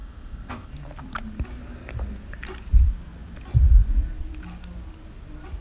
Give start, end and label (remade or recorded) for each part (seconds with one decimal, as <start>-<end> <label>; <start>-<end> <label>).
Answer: 0.0-0.7 remade; 0.7-5.6 recorded